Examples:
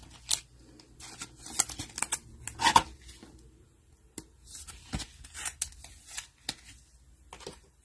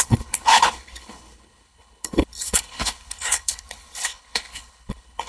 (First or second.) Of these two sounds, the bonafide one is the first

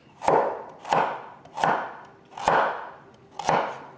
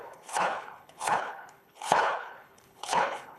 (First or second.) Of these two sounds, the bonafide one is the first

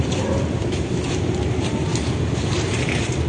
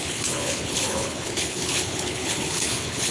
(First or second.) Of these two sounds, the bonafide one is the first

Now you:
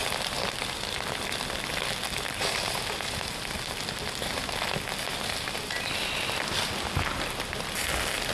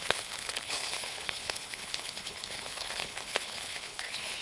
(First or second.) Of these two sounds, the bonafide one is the first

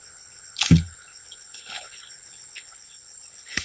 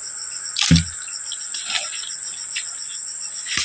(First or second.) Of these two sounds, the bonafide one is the second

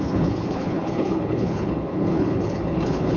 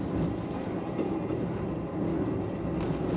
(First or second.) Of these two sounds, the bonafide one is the second